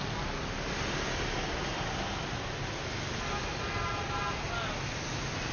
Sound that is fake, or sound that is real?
real